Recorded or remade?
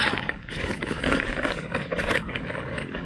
remade